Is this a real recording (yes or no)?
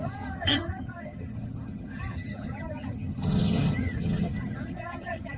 no